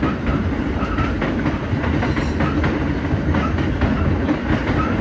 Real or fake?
real